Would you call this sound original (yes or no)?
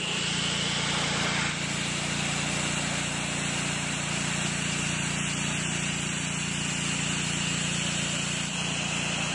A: yes